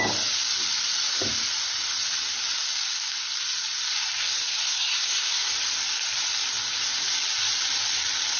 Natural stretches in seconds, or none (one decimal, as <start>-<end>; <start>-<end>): 0.0-4.7; 5.5-8.4